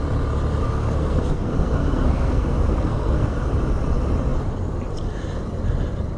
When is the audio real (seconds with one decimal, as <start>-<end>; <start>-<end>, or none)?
0.0-0.6; 3.5-6.2